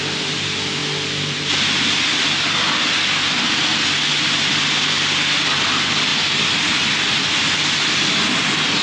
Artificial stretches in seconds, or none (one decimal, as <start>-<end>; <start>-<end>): none